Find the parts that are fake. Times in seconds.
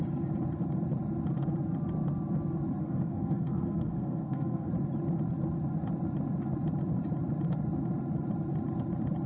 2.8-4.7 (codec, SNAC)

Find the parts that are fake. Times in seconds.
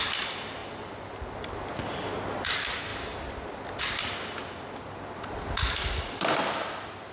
none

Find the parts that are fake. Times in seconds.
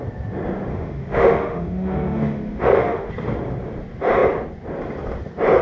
0.7-3.1 (autoencoder, DAC-VAE)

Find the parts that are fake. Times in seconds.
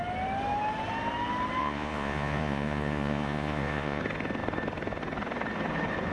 1.6-4.0 (vocoder, Vocos)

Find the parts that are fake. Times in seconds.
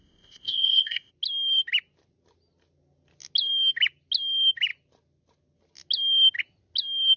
0.0-1.1 (codec, ZipCodec)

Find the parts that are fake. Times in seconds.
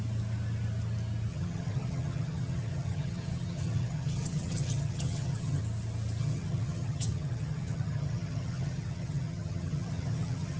1.3-5.6 (vocoder, HiFi-GAN); 6.2-10.6